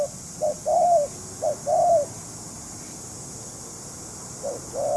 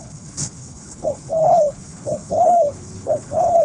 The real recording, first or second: first